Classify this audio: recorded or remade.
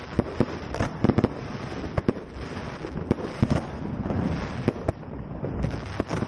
recorded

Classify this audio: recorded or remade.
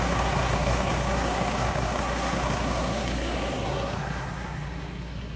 remade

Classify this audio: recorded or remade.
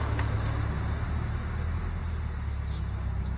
recorded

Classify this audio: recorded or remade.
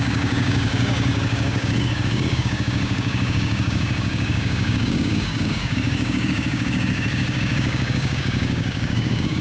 remade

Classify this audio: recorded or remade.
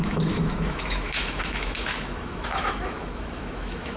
remade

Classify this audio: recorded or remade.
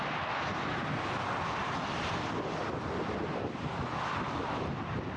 recorded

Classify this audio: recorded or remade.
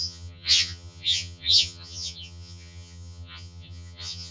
remade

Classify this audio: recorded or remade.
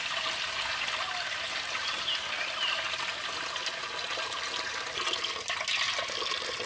recorded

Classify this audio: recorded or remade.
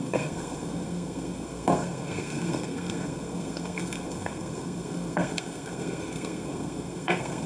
remade